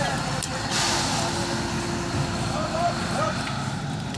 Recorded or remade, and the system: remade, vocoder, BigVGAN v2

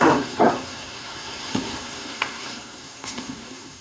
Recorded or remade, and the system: remade, codec, SNAC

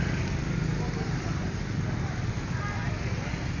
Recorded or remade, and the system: recorded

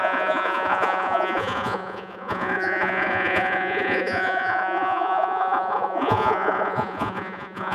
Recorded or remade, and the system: remade, vocoder, Vocos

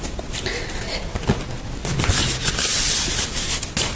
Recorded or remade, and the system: recorded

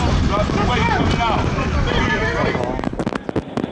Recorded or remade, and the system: recorded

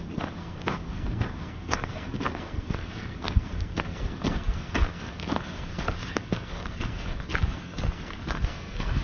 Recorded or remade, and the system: remade, codec, SNAC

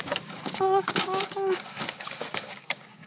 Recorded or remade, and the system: remade, codec, DAC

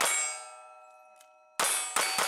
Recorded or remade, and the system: recorded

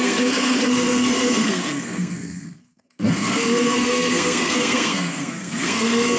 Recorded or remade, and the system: remade, codec, SNAC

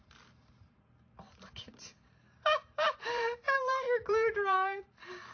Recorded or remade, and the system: remade, vocoder, BigVGAN v2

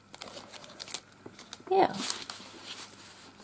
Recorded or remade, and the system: recorded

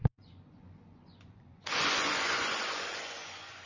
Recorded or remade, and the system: remade, vocoder, Vocos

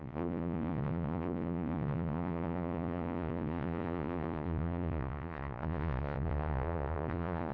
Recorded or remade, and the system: remade, vocoder, Vocos